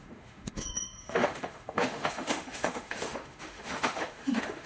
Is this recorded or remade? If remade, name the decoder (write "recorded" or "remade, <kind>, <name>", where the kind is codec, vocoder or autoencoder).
remade, autoencoder, DAC-VAE